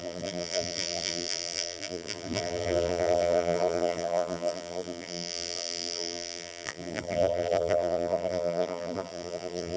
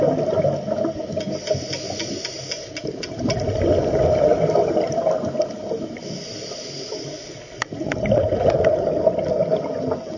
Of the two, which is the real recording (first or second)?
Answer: second